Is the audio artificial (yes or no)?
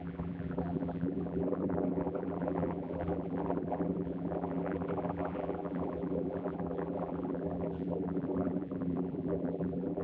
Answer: yes